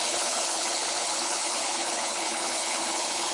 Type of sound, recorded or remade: remade